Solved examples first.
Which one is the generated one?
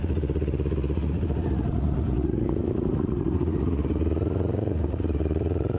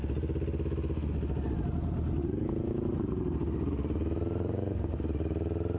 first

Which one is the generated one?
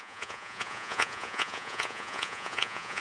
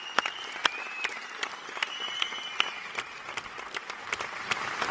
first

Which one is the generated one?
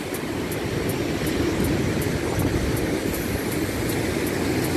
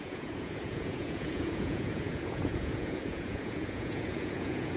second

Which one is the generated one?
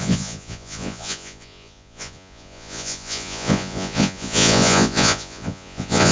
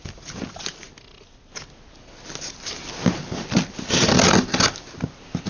first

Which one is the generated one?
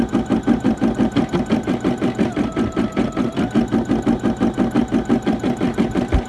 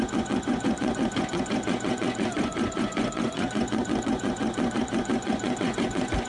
second